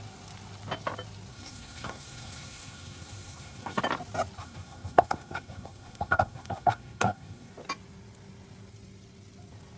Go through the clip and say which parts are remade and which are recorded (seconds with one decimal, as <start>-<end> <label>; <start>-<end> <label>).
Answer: 0.0-1.3 recorded; 1.3-3.8 remade; 3.8-4.4 recorded; 4.4-7.5 remade; 7.5-9.8 recorded